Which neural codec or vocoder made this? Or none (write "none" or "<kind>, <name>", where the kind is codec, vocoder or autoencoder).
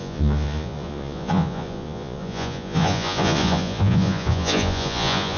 vocoder, Vocos